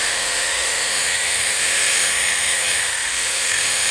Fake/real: fake